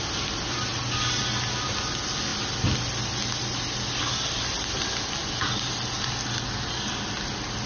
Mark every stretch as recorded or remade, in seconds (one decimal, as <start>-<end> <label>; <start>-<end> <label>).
0.0-2.3 recorded; 2.3-6.5 remade; 6.5-7.7 recorded